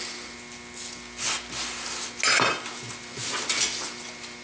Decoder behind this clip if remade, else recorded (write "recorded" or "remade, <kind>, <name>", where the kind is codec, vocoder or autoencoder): recorded